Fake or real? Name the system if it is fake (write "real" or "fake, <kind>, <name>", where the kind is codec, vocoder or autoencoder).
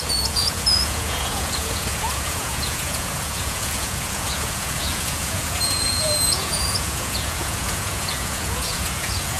fake, vocoder, Vocos